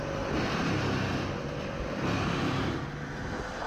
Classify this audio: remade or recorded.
recorded